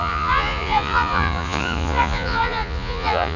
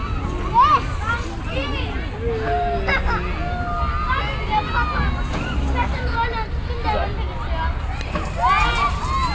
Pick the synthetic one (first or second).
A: first